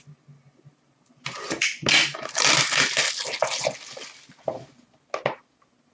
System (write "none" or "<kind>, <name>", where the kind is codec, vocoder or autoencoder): none